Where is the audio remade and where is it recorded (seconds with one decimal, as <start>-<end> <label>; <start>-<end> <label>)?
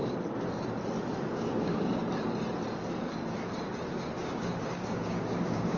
0.0-1.2 recorded; 1.2-2.0 remade; 2.0-4.2 recorded; 4.2-5.8 remade